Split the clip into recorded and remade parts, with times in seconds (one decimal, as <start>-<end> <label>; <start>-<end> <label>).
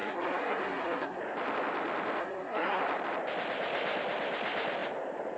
0.0-1.2 remade; 1.2-2.2 recorded; 2.2-2.8 remade; 2.8-5.4 recorded